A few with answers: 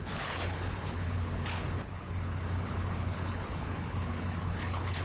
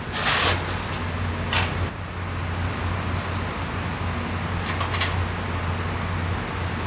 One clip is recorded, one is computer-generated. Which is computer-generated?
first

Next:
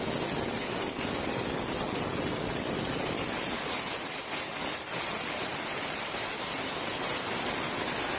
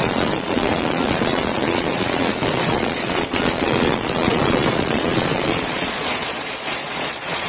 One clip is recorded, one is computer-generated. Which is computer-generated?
second